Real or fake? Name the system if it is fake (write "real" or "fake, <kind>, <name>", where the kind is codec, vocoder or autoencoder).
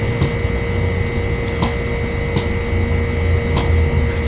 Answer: real